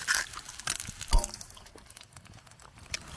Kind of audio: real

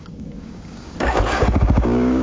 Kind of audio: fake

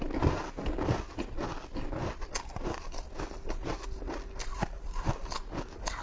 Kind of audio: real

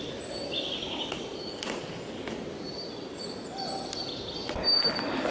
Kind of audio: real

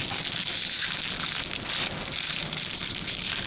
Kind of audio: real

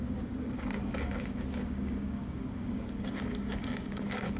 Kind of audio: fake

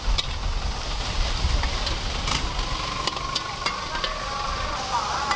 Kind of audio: real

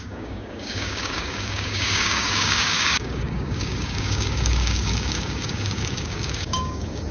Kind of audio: fake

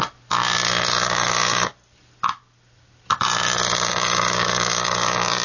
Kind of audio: real